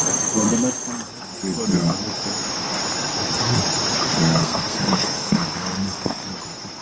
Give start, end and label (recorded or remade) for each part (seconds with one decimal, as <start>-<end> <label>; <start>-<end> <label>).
0.0-4.4 recorded; 4.4-6.3 remade; 6.3-6.8 recorded

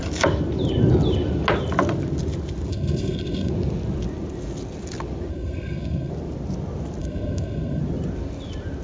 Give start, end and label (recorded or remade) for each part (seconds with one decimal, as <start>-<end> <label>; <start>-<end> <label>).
0.0-2.7 recorded; 2.7-3.5 remade; 3.5-5.3 recorded; 5.3-6.1 remade; 6.1-7.0 recorded; 7.0-7.8 remade; 7.8-8.8 recorded

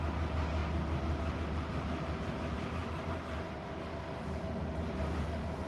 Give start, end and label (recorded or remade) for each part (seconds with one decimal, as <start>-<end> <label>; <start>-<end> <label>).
0.0-5.7 recorded

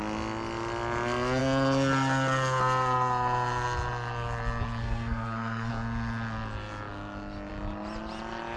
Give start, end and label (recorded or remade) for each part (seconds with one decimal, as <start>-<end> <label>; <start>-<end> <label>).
0.0-4.8 recorded; 4.8-5.7 remade; 5.7-8.6 recorded

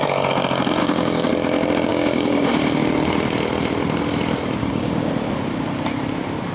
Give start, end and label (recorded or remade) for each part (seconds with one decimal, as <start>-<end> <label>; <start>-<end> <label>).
0.0-0.8 recorded; 0.8-1.3 remade; 1.3-1.9 recorded; 1.9-2.5 remade; 2.5-4.6 recorded; 4.6-5.1 remade; 5.1-6.5 recorded

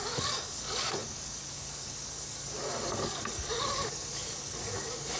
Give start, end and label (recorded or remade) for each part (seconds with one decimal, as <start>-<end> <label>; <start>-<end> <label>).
0.0-5.2 remade